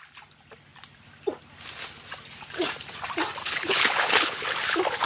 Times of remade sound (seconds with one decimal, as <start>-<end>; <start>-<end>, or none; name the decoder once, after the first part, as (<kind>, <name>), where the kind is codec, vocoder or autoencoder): 3.4-4.5 (codec, HILCodec)